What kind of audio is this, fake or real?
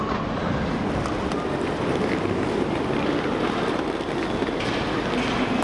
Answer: real